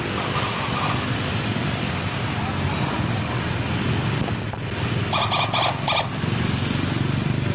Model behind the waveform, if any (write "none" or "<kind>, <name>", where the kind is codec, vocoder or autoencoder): none